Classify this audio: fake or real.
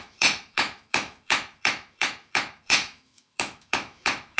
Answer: fake